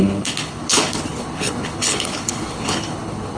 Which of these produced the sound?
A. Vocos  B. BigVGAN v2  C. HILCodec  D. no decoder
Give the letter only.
C